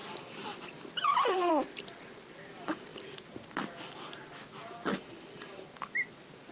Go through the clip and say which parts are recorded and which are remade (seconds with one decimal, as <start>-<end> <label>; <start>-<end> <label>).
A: 0.0-6.5 recorded